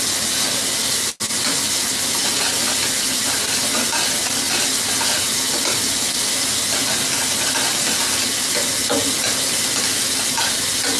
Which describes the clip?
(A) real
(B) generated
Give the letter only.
A